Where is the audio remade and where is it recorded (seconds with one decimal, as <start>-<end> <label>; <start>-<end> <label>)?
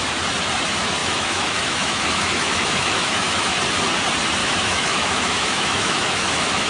0.0-1.0 recorded; 1.0-3.6 remade; 3.6-4.4 recorded; 4.4-6.7 remade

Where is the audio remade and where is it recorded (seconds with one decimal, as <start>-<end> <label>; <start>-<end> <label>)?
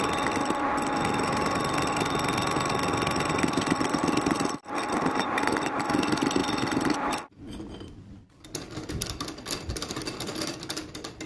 0.0-11.3 recorded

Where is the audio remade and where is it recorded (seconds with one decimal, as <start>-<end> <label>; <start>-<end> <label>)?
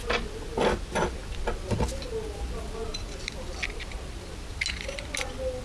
0.0-5.6 recorded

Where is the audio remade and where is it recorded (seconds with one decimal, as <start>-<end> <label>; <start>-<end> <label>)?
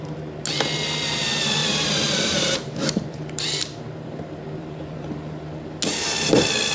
0.0-1.6 recorded; 1.6-5.6 remade; 5.6-6.7 recorded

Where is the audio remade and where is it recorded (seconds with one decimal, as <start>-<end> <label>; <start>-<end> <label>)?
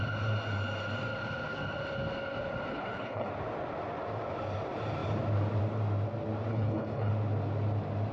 0.0-2.7 recorded; 2.7-3.3 remade; 3.3-6.5 recorded; 6.5-7.1 remade; 7.1-8.1 recorded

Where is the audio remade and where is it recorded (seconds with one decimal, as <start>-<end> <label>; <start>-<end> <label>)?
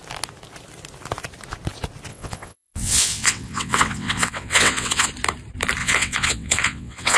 0.0-2.1 recorded; 2.1-5.1 remade; 5.1-5.8 recorded; 5.8-7.2 remade